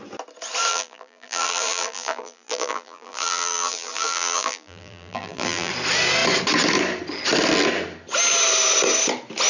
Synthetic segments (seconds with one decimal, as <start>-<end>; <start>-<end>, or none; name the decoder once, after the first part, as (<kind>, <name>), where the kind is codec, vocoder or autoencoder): 0.7-5.7 (vocoder, BigVGAN v2)